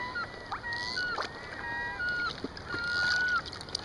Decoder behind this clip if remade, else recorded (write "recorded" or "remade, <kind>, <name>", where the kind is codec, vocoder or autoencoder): recorded